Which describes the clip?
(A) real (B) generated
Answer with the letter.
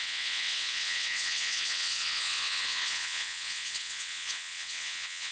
B